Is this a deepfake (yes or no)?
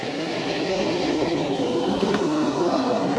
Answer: yes